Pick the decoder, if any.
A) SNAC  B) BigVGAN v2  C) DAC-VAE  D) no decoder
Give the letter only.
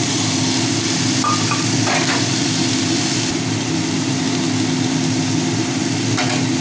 D